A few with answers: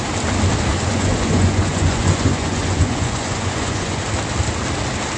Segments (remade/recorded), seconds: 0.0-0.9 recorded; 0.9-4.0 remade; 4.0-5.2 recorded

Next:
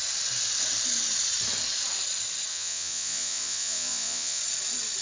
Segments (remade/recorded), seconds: 0.0-2.5 recorded; 2.5-4.4 remade; 4.4-5.0 recorded